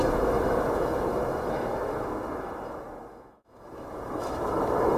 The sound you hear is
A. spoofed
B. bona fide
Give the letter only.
A